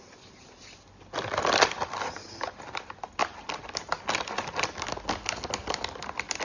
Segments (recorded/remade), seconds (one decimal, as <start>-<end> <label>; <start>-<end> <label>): 0.0-6.4 recorded